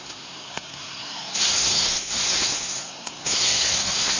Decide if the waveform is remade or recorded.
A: remade